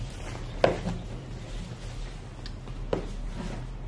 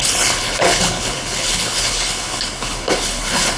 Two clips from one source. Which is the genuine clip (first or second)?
first